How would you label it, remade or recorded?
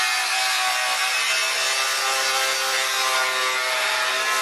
recorded